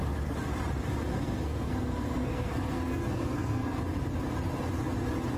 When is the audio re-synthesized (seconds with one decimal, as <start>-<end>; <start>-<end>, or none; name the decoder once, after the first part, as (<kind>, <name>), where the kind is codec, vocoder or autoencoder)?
1.1-3.8 (codec, SNAC)